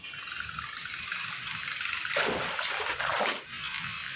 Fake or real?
real